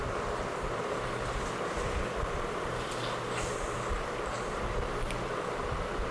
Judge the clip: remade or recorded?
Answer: recorded